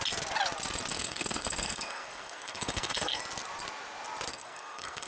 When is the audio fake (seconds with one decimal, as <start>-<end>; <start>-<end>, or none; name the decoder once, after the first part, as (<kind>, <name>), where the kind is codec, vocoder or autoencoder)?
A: 0.9-3.2 (codec, SNAC); 4.3-5.1